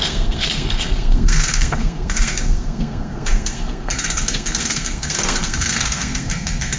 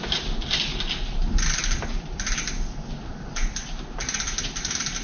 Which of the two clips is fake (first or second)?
first